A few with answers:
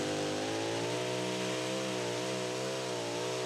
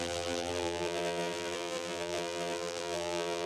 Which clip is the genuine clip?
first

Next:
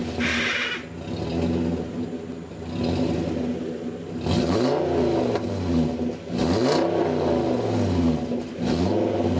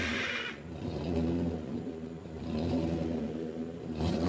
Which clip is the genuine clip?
first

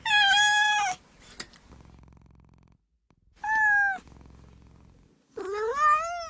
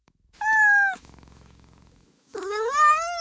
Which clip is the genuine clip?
first